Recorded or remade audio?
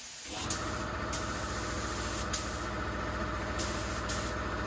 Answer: recorded